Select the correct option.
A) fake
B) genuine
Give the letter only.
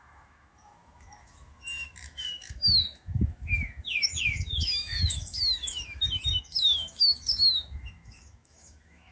A